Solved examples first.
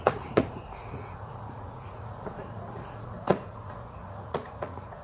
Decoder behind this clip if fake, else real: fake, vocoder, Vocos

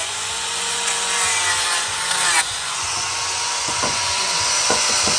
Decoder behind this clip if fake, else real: fake, vocoder, Vocos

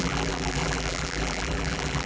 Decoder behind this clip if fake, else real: fake, vocoder, BigVGAN v2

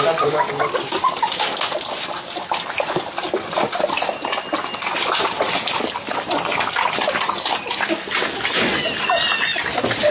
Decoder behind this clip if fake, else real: real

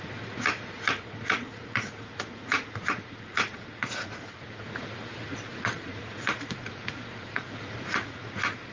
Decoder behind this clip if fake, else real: fake, vocoder, Vocos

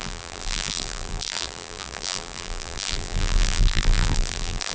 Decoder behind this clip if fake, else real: fake, vocoder, BigVGAN v2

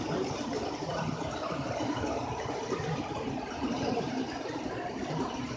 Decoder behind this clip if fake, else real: fake, vocoder, BigVGAN v2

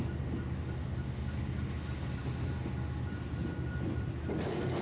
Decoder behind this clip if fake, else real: real